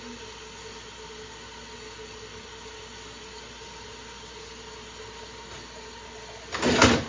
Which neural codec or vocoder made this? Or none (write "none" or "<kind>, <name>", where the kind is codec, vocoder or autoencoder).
none